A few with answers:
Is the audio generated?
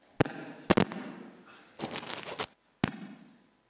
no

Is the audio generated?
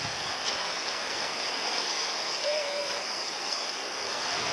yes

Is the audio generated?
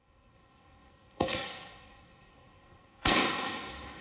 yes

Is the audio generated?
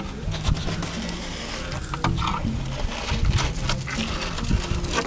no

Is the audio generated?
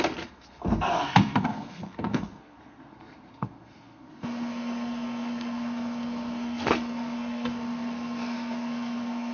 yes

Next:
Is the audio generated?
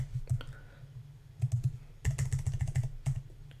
no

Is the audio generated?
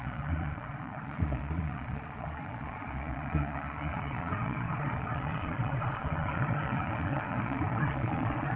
yes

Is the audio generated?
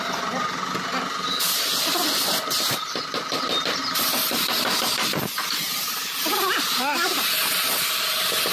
no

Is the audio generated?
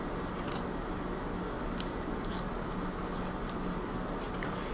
no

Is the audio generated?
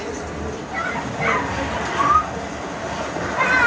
no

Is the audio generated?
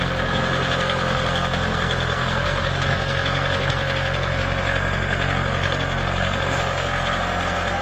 yes